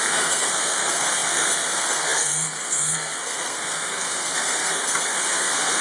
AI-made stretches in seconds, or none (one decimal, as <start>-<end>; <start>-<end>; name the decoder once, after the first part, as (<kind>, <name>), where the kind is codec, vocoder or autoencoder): 0.0-5.8 (codec, SNAC)